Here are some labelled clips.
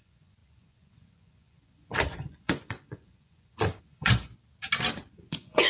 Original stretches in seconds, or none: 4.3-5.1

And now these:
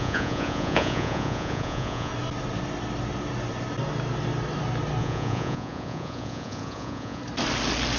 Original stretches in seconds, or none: 2.1-5.0; 7.2-8.0

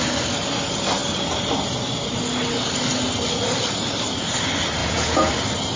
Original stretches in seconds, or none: 0.0-4.8; 5.3-5.8

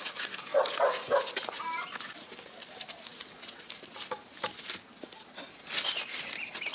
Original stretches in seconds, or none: 0.0-6.7

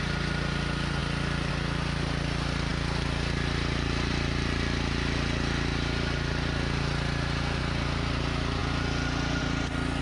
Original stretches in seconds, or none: 0.0-10.0

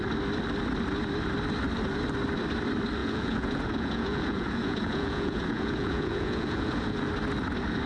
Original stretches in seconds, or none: 0.0-3.0; 7.1-7.9

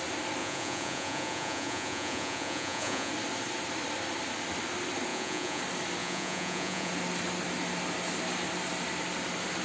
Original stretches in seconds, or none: 0.0-0.4; 3.1-5.1; 5.6-6.0; 6.9-9.6